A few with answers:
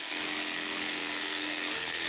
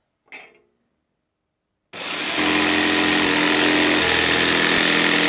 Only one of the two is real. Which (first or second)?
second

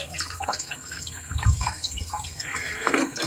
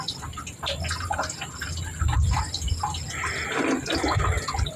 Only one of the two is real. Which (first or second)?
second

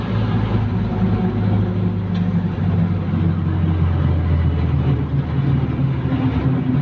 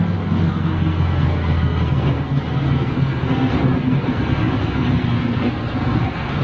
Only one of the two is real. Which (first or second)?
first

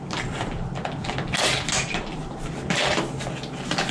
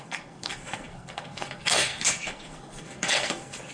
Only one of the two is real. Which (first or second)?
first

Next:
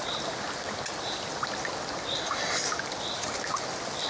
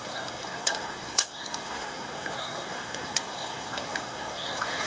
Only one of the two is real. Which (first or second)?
first